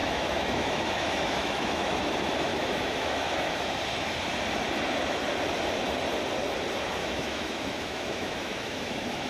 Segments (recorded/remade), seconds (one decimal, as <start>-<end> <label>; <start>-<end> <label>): 0.0-2.0 remade; 2.0-2.5 recorded; 2.5-3.8 remade; 3.8-7.0 recorded; 7.0-9.3 remade